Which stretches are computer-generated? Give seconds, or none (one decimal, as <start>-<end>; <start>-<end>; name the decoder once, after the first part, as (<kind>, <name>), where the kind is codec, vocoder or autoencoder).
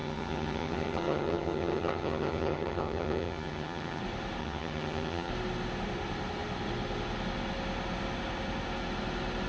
0.0-4.0 (vocoder, HiFi-GAN); 4.4-5.3